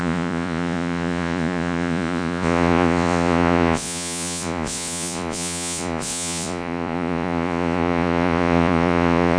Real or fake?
fake